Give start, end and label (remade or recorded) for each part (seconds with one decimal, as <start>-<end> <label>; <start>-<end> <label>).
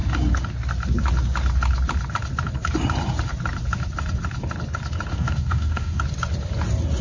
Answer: 0.0-5.1 recorded; 5.1-6.0 remade; 6.0-7.0 recorded